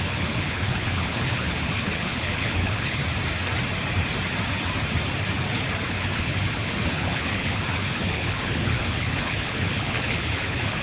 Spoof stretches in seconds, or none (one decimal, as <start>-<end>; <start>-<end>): 0.0-3.0; 5.9-10.8